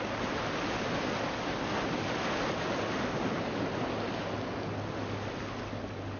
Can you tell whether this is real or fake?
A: real